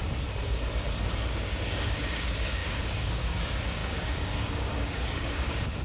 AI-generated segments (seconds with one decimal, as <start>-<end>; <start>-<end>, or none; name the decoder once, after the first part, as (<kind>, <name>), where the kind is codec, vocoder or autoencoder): 1.3-5.8 (codec, DAC)